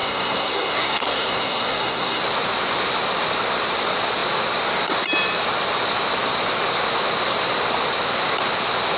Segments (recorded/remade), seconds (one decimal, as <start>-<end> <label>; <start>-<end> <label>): 0.0-2.2 remade; 2.2-9.0 recorded